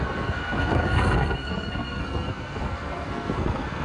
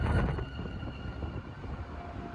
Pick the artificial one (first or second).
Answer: first